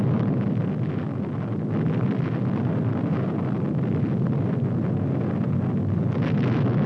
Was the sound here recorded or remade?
recorded